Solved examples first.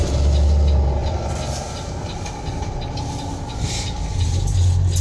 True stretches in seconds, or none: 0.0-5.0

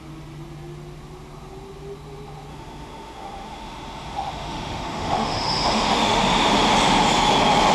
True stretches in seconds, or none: 0.0-2.5; 6.2-7.7

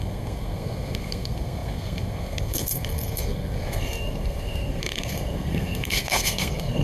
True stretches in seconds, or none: none

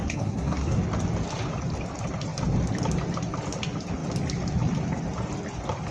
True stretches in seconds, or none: 0.8-5.9

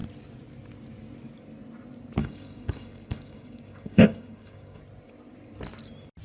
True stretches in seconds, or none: 0.0-2.2; 4.8-6.2

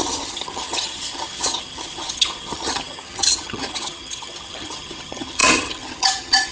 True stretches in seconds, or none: none

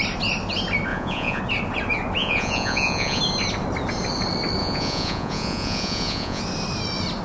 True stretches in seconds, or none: 0.0-0.9; 1.4-2.2; 3.2-4.6; 6.4-7.2